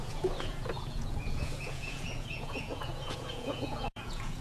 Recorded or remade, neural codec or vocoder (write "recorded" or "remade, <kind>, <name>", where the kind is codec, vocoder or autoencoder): remade, vocoder, Vocos